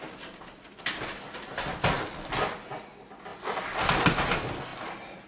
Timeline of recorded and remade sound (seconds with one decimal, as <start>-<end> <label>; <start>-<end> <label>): 0.0-5.3 recorded